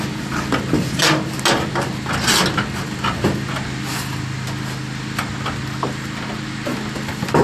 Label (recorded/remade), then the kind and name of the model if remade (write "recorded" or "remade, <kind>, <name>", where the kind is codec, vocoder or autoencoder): recorded